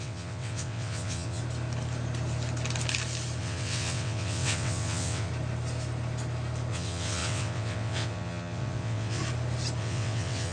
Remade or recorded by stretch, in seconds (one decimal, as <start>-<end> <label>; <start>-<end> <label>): 0.0-1.4 remade; 1.4-3.4 recorded; 3.4-5.3 remade; 5.3-6.7 recorded; 6.7-9.2 remade; 9.2-9.8 recorded; 9.8-10.5 remade